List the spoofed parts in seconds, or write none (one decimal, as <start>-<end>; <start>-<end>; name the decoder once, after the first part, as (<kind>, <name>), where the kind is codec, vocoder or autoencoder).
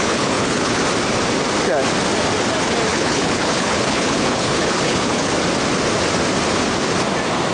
0.0-0.8 (codec, HILCodec); 2.9-5.3